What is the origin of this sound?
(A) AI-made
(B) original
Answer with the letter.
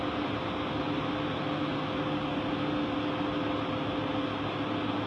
B